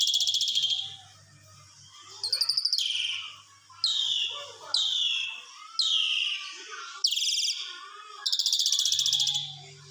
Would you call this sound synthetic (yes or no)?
no